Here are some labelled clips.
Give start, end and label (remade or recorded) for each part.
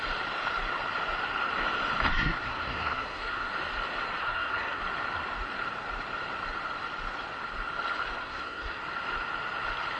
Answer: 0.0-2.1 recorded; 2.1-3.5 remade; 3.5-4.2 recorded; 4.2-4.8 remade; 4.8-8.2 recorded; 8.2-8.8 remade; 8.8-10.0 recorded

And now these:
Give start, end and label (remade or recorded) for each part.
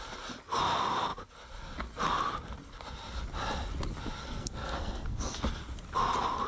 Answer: 0.0-4.2 recorded; 4.2-5.4 remade; 5.4-6.5 recorded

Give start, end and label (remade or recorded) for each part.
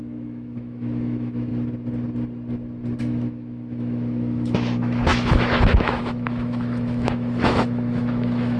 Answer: 0.0-1.5 remade; 1.5-3.0 recorded; 3.0-8.6 remade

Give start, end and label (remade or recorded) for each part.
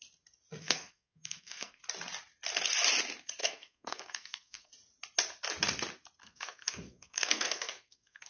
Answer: 0.0-0.6 recorded; 0.6-1.8 remade; 1.8-3.4 recorded; 3.4-4.7 remade; 4.7-6.2 recorded; 6.2-8.3 remade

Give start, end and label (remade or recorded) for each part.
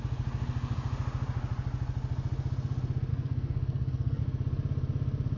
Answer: 0.0-3.1 recorded; 3.1-4.2 remade; 4.2-5.4 recorded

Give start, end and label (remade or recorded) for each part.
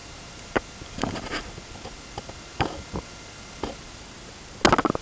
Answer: 0.0-5.0 recorded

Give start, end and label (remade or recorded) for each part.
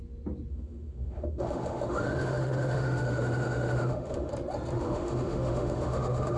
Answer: 0.0-0.5 recorded; 0.5-4.3 remade; 4.3-4.8 recorded; 4.8-6.4 remade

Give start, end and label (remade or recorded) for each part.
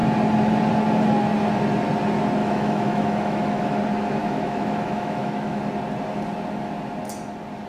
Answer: 0.0-2.4 recorded; 2.4-3.8 remade; 3.8-4.2 recorded; 4.2-5.6 remade; 5.6-7.7 recorded